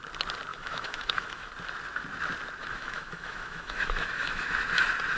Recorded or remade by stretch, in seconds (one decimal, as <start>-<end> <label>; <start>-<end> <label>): 0.0-0.5 recorded; 0.5-1.5 remade; 1.5-2.6 recorded; 2.6-4.6 remade; 4.6-5.2 recorded